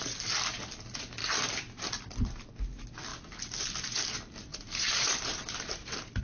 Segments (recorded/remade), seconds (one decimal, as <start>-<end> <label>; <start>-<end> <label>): 0.0-4.5 recorded; 4.5-6.2 remade